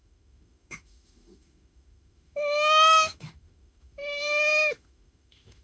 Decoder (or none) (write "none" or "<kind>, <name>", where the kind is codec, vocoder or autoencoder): autoencoder, DAC-VAE